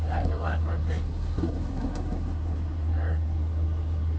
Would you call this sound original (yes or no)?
no